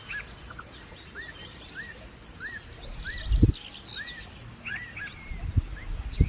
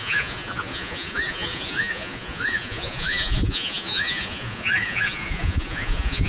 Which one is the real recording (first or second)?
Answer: first